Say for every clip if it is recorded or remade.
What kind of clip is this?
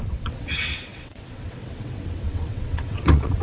remade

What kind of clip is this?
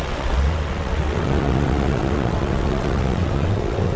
remade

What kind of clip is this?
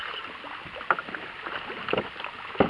recorded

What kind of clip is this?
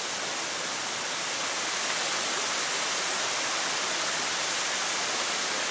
recorded